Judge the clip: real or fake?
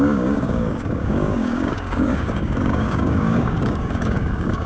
fake